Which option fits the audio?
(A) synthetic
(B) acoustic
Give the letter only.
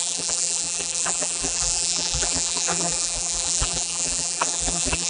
A